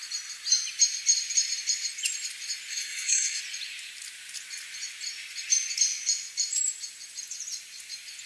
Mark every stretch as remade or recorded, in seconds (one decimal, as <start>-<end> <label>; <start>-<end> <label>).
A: 0.0-2.7 recorded; 2.7-3.4 remade; 3.4-8.3 recorded